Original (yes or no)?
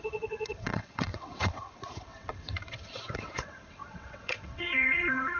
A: no